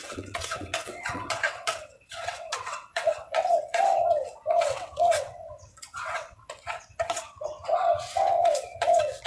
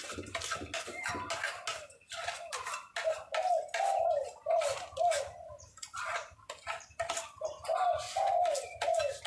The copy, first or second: first